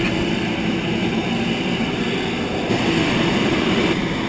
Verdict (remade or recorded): recorded